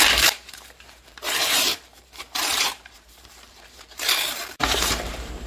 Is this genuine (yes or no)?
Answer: no